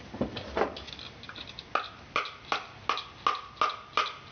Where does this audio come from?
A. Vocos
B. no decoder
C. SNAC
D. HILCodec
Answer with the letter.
B